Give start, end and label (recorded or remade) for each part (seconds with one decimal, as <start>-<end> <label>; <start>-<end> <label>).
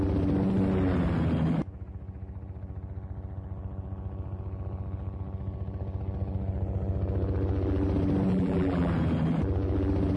0.0-8.3 recorded; 8.3-8.9 remade; 8.9-10.2 recorded